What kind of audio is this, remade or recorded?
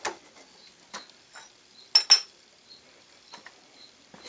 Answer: recorded